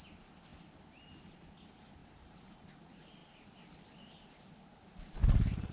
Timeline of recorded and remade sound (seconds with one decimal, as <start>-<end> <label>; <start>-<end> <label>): 0.0-2.0 recorded; 2.0-2.7 remade; 2.7-5.2 recorded; 5.2-5.7 remade